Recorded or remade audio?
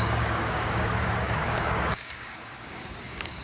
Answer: remade